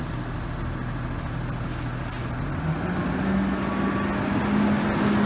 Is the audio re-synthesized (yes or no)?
no